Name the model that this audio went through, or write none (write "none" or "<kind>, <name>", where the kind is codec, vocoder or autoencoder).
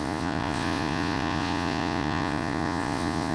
vocoder, Vocos